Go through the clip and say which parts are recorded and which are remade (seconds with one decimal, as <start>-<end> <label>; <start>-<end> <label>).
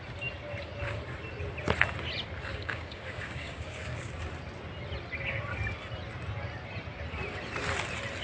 0.0-2.5 recorded; 2.5-4.1 remade; 4.1-8.2 recorded